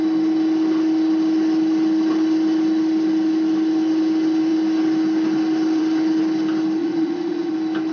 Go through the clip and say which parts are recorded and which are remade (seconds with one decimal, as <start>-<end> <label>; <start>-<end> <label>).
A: 0.0-6.8 recorded; 6.8-7.5 remade; 7.5-7.9 recorded